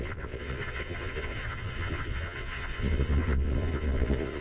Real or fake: fake